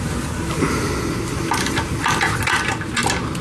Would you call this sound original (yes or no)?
yes